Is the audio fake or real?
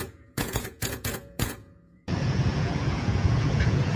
fake